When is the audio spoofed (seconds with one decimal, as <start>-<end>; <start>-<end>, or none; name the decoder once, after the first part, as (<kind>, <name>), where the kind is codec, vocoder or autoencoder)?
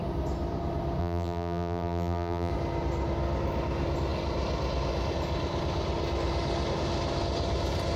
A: 1.0-2.5 (vocoder, BigVGAN v2)